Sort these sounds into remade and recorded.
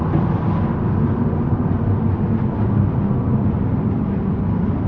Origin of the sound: recorded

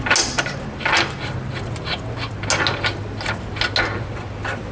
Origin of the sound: recorded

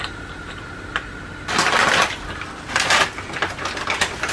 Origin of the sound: recorded